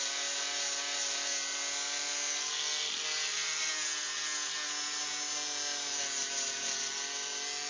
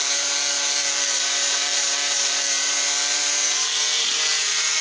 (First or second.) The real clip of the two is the first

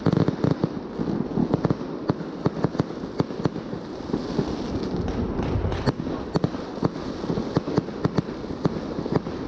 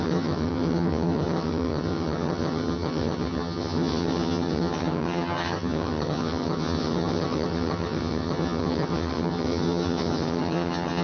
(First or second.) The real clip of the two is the first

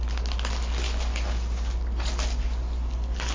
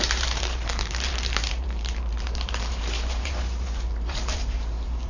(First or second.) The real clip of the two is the first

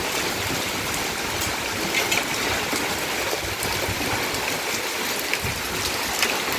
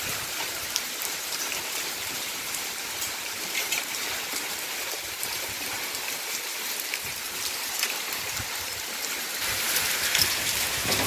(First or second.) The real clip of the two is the first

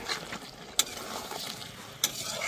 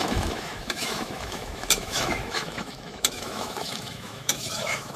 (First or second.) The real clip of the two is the first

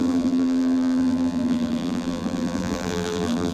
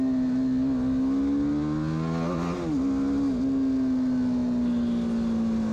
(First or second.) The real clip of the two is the second